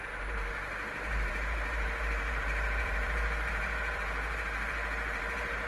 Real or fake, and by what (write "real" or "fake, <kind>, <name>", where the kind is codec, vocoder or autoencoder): fake, vocoder, BigVGAN v2